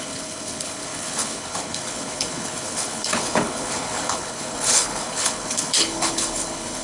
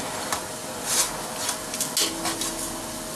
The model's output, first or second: first